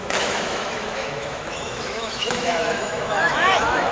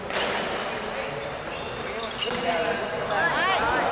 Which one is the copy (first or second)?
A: first